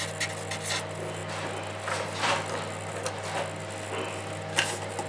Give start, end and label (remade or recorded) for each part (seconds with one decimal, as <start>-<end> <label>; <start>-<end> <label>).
0.0-5.1 recorded